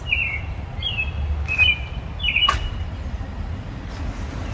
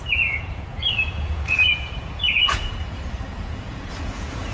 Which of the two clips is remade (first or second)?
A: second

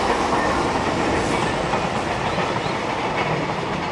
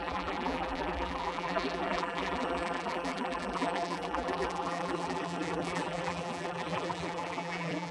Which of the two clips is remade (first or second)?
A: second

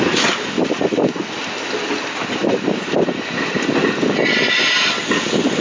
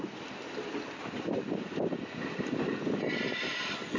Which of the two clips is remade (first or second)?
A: second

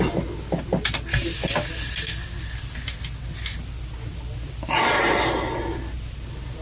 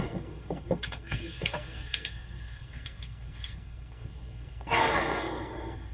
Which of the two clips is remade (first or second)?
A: second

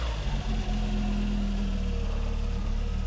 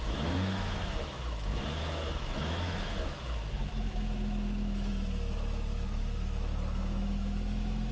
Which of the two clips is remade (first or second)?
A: second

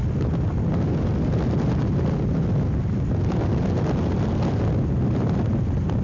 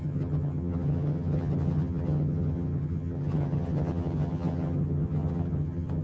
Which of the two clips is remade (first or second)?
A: second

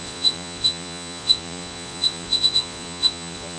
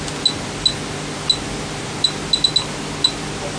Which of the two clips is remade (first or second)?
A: first